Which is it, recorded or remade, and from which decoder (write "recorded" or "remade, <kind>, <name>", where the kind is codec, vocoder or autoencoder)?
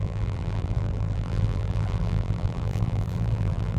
remade, vocoder, BigVGAN v2